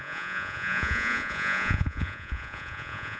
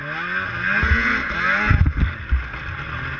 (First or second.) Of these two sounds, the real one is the second